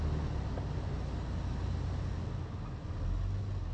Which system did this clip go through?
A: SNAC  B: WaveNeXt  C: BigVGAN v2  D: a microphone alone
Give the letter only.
D